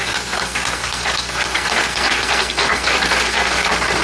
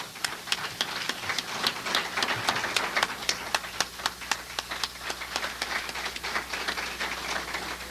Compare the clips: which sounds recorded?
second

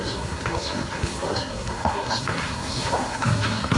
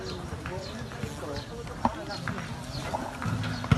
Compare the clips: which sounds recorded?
second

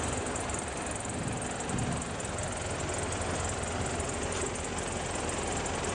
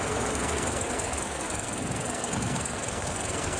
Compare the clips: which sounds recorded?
first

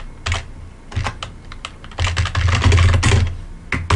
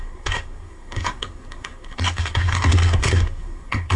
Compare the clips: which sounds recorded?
first